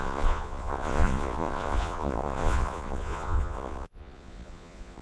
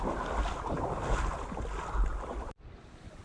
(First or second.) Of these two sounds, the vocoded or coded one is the first